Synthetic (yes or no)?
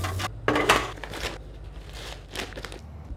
no